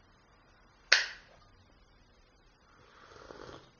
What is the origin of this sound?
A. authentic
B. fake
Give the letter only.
A